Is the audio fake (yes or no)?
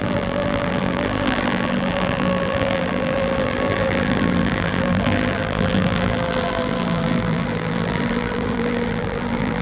yes